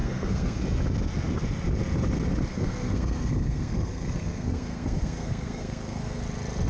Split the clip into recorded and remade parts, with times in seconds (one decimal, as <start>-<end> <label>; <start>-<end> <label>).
0.0-0.6 remade; 0.6-2.5 recorded; 2.5-6.2 remade; 6.2-6.7 recorded